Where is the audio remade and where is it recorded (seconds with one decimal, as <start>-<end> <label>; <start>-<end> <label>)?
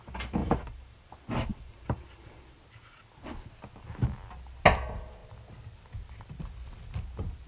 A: 0.0-0.4 recorded; 0.4-1.1 remade; 1.1-1.5 recorded; 1.5-2.4 remade; 2.4-7.5 recorded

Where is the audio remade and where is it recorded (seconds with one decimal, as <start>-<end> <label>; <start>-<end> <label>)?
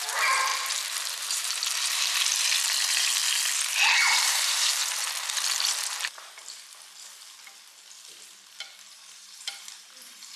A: 0.0-0.5 remade; 0.5-1.3 recorded; 1.3-2.3 remade; 2.3-2.8 recorded; 2.8-3.2 remade; 3.2-4.0 recorded; 4.0-4.8 remade; 4.8-8.9 recorded; 8.9-10.4 remade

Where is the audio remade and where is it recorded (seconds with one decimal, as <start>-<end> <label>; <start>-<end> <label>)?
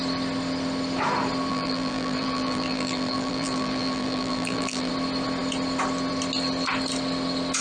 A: 0.0-1.5 recorded; 1.5-4.9 remade; 4.9-7.6 recorded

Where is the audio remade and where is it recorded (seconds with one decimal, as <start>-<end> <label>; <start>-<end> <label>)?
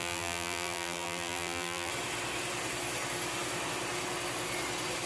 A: 0.0-1.9 remade; 1.9-5.1 recorded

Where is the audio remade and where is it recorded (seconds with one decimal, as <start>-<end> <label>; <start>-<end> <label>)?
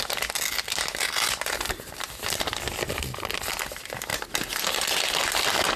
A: 0.0-5.8 recorded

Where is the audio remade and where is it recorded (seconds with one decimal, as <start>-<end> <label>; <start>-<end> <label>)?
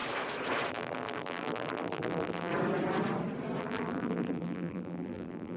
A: 0.0-0.7 recorded; 0.7-2.5 remade; 2.5-3.6 recorded; 3.6-5.6 remade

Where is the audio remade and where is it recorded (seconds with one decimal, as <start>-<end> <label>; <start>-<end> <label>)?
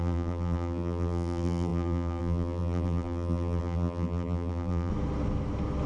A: 0.0-4.9 remade; 4.9-5.9 recorded